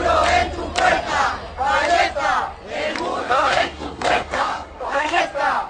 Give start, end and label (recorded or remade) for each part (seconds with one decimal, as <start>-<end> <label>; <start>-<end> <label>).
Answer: 0.0-3.2 recorded; 3.2-5.2 remade; 5.2-5.7 recorded